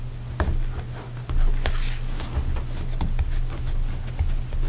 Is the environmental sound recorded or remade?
recorded